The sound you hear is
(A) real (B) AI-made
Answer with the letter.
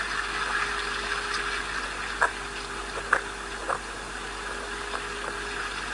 A